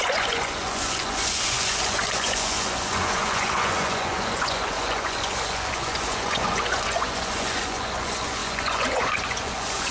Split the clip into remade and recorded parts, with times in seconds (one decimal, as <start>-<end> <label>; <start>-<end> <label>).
0.0-9.9 remade